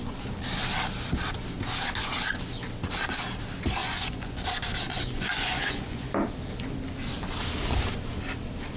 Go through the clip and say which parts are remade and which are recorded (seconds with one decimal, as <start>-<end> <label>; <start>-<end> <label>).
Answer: 0.0-3.8 recorded; 3.8-4.4 remade; 4.4-4.9 recorded; 4.9-6.1 remade; 6.1-8.8 recorded